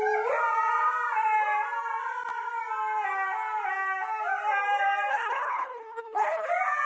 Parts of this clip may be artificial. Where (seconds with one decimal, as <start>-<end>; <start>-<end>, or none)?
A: 5.1-6.5